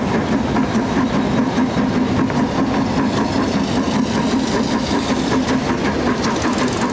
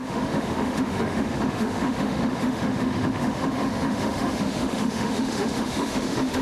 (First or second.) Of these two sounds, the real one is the first